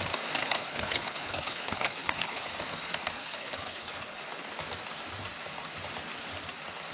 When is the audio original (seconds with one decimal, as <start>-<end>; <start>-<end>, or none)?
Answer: 0.0-0.4; 2.5-3.2; 4.2-6.9